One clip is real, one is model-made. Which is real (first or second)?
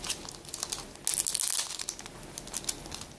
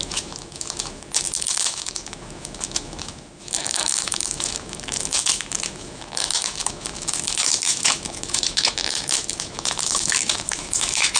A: first